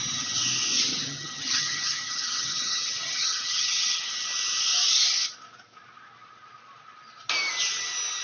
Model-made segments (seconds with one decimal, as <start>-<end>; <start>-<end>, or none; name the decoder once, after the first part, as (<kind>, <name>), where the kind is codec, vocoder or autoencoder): 0.9-4.1 (vocoder, HiFi-GAN)

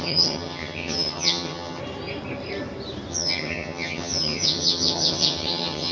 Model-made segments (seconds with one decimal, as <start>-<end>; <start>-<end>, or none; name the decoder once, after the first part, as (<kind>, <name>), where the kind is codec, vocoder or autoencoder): 0.0-1.8 (vocoder, HiFi-GAN); 3.1-5.9